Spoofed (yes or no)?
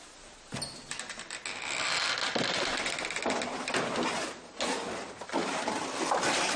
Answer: no